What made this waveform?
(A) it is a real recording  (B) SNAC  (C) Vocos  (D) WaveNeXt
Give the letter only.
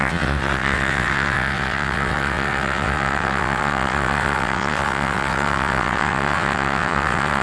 D